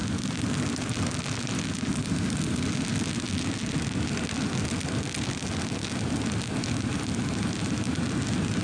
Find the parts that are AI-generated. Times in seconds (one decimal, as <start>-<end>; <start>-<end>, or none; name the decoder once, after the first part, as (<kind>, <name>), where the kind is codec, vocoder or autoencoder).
none